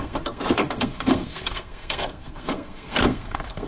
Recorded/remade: remade